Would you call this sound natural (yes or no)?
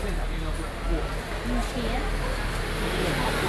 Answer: yes